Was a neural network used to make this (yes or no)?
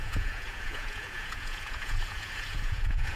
yes